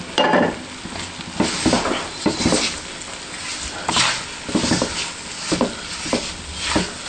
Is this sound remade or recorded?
recorded